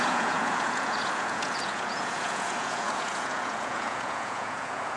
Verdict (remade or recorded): remade